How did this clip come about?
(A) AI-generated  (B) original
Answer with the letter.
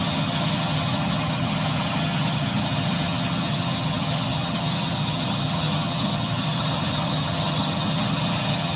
A